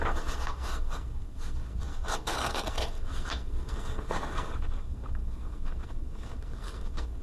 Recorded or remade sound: remade